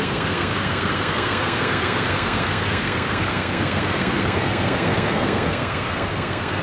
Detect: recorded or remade remade